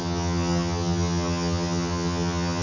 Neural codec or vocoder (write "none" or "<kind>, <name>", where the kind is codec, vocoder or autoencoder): vocoder, HiFi-GAN